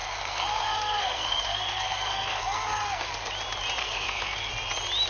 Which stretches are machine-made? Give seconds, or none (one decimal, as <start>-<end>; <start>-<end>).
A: 0.0-3.1; 3.8-4.5